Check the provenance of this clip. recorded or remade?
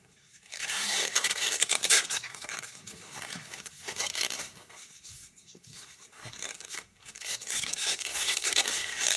remade